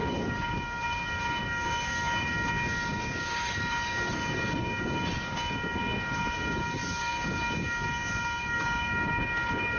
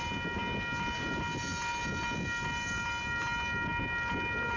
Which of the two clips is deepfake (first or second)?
first